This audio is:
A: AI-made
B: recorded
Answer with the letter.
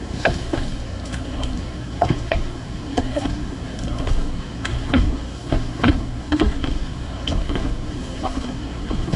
A